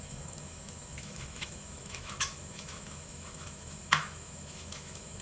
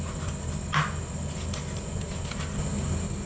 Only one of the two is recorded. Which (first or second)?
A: second